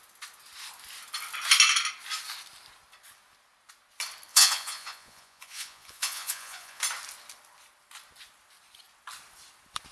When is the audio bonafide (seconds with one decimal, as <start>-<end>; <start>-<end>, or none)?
0.0-4.3; 6.8-9.9